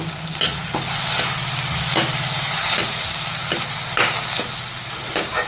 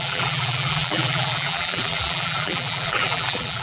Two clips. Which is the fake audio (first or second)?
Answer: second